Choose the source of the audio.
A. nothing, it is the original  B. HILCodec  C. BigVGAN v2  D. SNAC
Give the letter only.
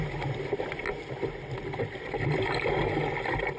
A